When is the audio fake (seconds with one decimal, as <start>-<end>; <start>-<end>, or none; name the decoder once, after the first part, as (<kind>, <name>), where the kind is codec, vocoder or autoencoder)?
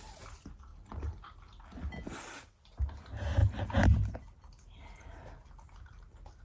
none